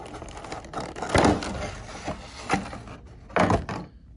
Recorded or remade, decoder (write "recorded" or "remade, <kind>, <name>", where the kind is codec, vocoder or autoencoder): recorded